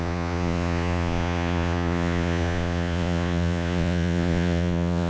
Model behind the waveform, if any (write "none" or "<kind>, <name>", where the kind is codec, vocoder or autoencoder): vocoder, Vocos